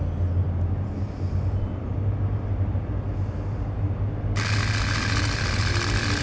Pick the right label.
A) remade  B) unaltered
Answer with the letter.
B